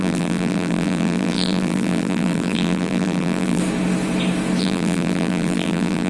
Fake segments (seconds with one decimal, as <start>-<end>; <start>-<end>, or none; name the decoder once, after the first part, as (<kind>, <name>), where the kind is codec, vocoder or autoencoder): 0.0-3.6 (vocoder, BigVGAN v2); 4.6-6.1